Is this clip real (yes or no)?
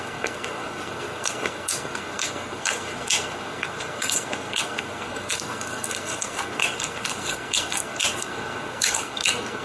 no